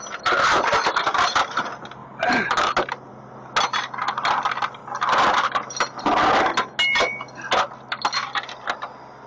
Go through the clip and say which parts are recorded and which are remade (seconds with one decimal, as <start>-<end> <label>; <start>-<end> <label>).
0.0-2.0 recorded; 2.0-3.1 remade; 3.1-9.3 recorded